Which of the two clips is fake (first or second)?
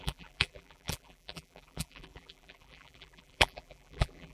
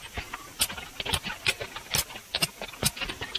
first